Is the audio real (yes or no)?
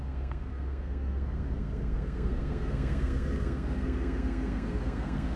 no